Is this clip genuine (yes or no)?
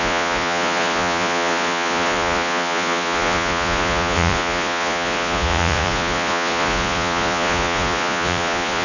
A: no